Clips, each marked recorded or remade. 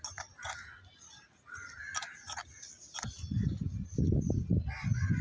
recorded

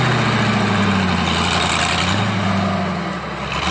recorded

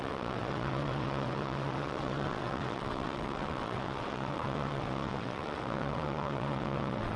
remade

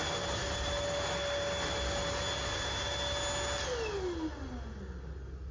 recorded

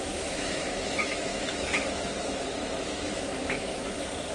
remade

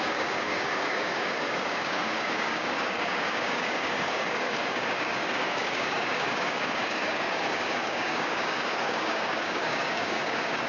remade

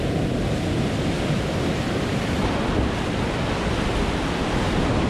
recorded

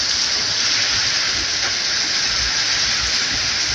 recorded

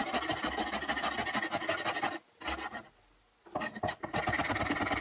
recorded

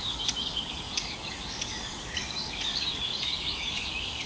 remade